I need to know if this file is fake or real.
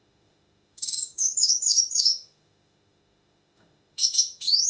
fake